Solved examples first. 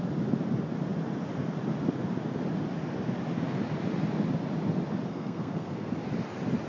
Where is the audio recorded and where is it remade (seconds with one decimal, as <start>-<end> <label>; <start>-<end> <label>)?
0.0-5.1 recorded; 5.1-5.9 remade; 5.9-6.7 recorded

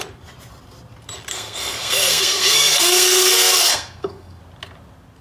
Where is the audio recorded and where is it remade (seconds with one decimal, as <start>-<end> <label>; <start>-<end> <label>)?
0.0-1.3 recorded; 1.3-4.4 remade; 4.4-5.2 recorded

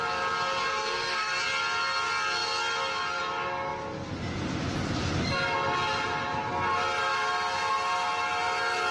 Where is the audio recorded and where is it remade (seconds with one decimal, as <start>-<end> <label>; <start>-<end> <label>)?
0.0-0.7 recorded; 0.7-1.4 remade; 1.4-8.9 recorded

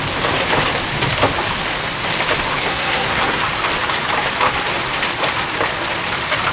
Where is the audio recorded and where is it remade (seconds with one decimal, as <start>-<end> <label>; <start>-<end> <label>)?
0.0-2.6 recorded; 2.6-3.4 remade; 3.4-6.5 recorded

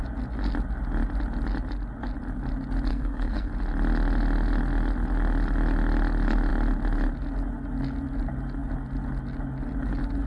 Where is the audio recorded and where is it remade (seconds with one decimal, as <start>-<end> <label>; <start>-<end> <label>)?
0.0-2.9 recorded; 2.9-3.5 remade; 3.5-10.3 recorded

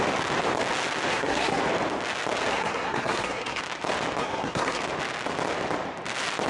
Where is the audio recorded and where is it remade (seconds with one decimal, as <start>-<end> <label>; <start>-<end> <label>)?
0.0-1.1 recorded; 1.1-1.6 remade; 1.6-2.5 recorded; 2.5-3.6 remade; 3.6-4.2 recorded; 4.2-4.8 remade; 4.8-6.5 recorded